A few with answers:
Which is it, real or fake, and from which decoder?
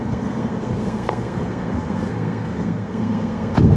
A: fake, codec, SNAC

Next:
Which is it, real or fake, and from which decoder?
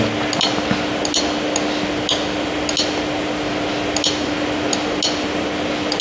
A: real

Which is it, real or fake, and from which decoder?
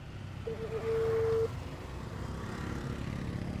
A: real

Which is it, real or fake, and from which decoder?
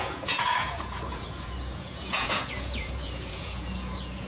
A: fake, vocoder, Vocos